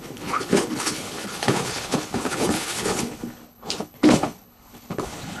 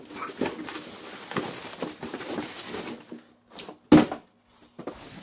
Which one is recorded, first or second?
second